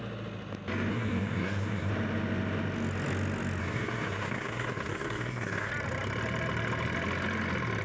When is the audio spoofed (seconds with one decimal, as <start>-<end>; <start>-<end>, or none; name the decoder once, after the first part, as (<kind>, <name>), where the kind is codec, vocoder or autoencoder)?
0.9-1.9 (codec, SNAC); 3.6-5.7